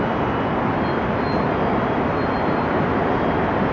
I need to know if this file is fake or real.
real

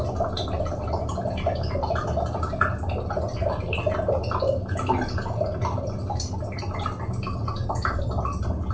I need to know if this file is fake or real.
real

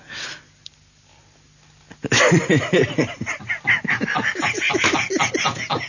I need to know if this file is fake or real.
real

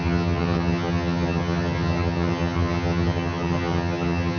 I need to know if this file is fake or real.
fake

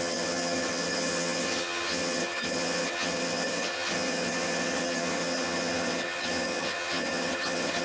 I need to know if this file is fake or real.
fake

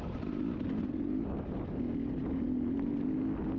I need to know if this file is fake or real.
real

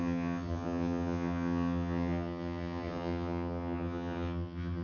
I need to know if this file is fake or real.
fake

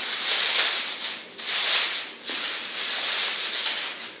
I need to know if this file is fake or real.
real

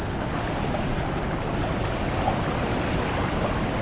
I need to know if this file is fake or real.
real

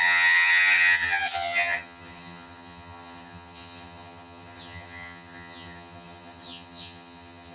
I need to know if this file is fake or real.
fake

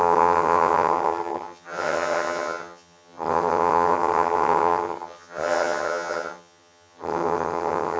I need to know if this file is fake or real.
fake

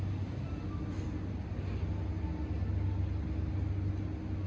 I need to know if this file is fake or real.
real